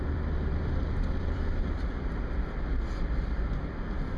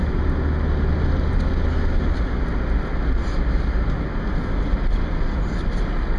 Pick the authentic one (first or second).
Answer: second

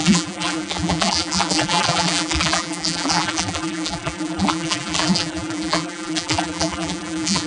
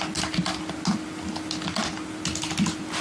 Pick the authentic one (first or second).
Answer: second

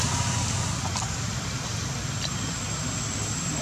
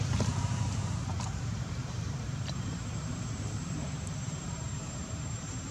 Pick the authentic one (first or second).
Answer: first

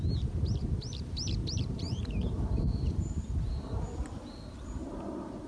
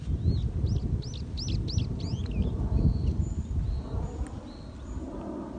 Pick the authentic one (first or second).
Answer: second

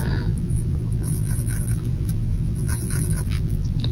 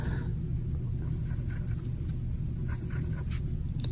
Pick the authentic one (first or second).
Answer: second